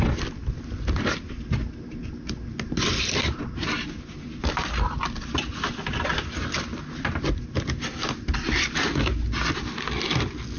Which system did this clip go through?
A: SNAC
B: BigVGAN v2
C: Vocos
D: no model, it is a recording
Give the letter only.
D